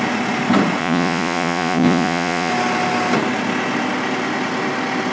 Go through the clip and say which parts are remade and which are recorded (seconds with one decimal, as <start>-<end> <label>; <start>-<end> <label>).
0.0-0.8 recorded; 0.8-2.5 remade; 2.5-5.1 recorded